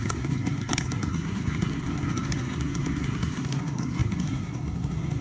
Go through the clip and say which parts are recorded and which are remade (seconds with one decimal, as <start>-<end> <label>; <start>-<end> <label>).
0.0-5.2 remade

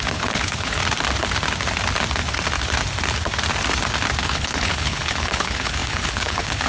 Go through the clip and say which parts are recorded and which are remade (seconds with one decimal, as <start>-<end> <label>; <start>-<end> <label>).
0.0-0.8 remade; 0.8-4.2 recorded; 4.2-6.7 remade

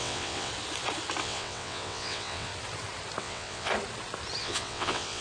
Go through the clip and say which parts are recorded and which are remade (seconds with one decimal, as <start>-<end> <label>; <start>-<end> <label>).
0.0-0.5 remade; 0.5-1.2 recorded; 1.2-2.5 remade; 2.5-3.2 recorded; 3.2-3.7 remade; 3.7-4.4 recorded; 4.4-5.2 remade

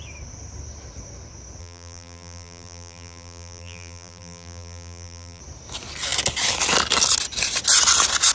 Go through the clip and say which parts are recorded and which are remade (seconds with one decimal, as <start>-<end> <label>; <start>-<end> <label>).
0.0-1.6 recorded; 1.6-5.4 remade; 5.4-8.3 recorded

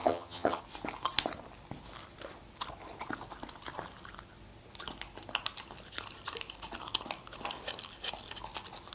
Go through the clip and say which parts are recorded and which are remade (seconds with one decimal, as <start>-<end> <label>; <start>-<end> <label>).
0.0-0.6 remade; 0.6-8.9 recorded

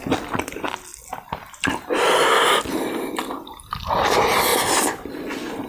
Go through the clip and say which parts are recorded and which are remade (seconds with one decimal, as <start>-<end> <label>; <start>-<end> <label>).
0.0-5.7 recorded

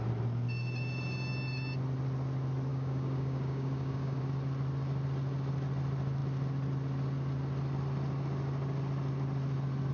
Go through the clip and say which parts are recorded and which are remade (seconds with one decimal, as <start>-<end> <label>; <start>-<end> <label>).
0.0-2.7 recorded; 2.7-4.2 remade; 4.2-9.9 recorded

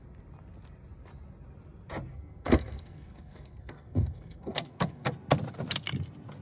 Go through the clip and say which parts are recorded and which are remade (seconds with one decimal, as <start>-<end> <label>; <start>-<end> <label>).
0.0-2.1 recorded; 2.1-5.1 remade; 5.1-6.4 recorded